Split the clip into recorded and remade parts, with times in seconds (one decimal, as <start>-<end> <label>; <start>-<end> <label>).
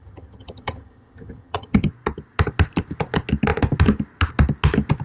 0.0-1.9 remade; 1.9-5.0 recorded